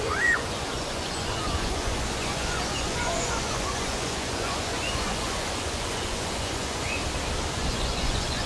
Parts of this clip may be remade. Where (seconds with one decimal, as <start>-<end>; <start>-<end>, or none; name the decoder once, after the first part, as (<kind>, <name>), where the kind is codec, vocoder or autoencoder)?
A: 0.0-7.0 (vocoder, Vocos); 7.5-8.5